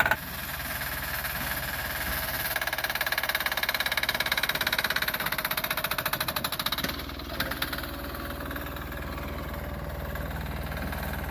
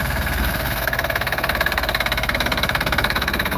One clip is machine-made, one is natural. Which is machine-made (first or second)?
second